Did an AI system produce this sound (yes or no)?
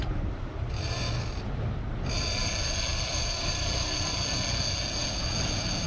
no